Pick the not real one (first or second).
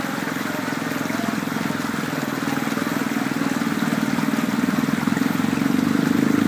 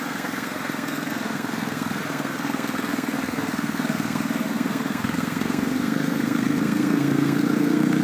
second